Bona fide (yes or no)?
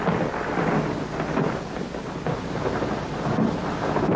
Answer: yes